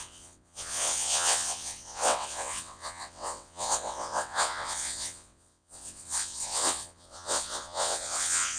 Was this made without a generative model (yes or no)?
no